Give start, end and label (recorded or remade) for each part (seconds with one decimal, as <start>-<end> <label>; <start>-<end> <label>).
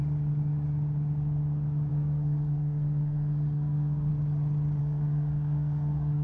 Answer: 0.0-1.9 recorded; 1.9-4.1 remade; 4.1-4.8 recorded; 4.8-6.2 remade